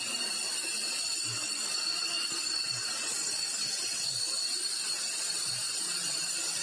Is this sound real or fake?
real